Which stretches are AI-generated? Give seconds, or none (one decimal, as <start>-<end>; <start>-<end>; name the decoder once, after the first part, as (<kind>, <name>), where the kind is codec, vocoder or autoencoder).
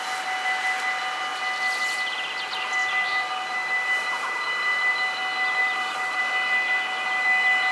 2.8-4.9 (vocoder, BigVGAN v2); 5.6-6.2